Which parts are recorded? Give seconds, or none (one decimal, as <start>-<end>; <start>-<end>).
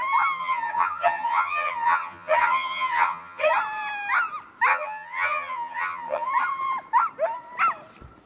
0.0-0.4; 3.5-4.7; 6.3-8.3